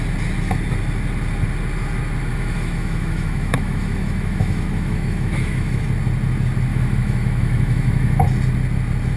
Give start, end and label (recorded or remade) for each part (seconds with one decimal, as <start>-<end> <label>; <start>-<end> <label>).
0.0-2.3 recorded; 2.3-5.8 remade; 5.8-6.7 recorded; 6.7-8.2 remade; 8.2-9.2 recorded